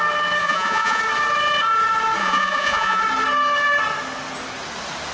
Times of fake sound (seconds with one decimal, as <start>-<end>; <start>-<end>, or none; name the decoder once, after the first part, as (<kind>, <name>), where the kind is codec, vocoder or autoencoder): 0.4-1.0 (vocoder, Vocos); 2.2-3.0

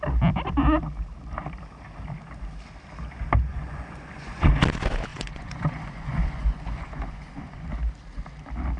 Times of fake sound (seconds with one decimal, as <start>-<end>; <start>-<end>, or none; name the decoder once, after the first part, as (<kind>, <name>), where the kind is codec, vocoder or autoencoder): 3.5-4.5 (vocoder, Vocos); 5.1-7.7

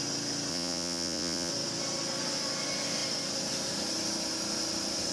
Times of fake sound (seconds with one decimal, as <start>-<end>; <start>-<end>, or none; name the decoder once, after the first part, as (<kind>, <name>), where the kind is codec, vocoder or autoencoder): 0.5-1.5 (vocoder, Vocos)

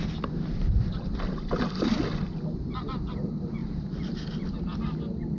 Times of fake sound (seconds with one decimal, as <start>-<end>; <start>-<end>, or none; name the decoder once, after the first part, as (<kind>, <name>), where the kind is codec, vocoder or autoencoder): none

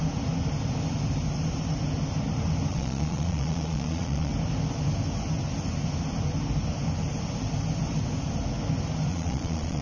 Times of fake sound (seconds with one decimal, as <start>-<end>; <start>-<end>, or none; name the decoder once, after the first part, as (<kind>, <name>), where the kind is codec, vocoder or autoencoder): 2.7-4.3 (vocoder, Vocos); 9.1-9.8

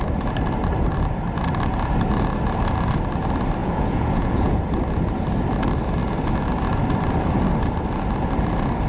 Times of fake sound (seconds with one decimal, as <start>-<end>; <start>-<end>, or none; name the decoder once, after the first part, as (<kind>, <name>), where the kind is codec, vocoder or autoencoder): 3.6-4.6 (vocoder, Vocos)

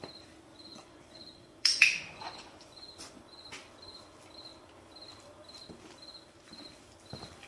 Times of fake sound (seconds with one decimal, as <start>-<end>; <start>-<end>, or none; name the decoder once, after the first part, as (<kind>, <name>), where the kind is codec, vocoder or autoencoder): 0.5-3.5 (vocoder, Vocos)